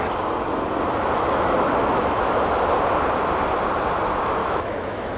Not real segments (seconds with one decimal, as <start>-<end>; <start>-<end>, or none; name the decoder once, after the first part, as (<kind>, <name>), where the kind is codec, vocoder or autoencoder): 1.8-2.4 (autoencoder, DAC-VAE); 4.4-5.2